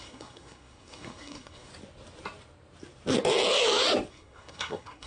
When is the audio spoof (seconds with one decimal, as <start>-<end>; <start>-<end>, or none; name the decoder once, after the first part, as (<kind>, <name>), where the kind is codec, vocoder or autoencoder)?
0.0-1.7 (codec, SNAC); 4.1-5.1